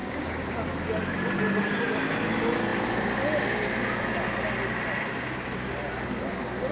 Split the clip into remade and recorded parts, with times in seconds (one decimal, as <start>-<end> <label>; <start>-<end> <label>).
0.0-0.5 remade; 0.5-6.7 recorded